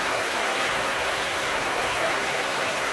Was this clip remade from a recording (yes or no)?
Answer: yes